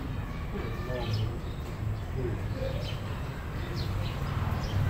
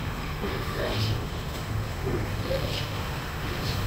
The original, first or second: first